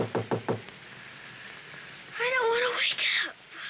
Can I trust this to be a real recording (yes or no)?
yes